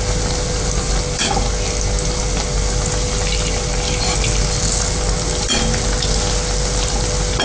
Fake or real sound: real